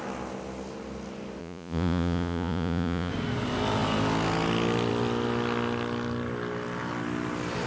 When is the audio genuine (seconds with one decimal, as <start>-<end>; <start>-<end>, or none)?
0.0-1.4; 3.1-7.7